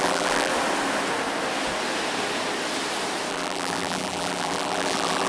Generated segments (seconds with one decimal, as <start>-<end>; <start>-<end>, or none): 0.0-0.5; 3.3-5.3